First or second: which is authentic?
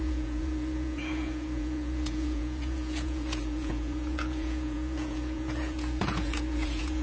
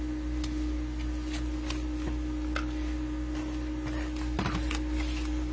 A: second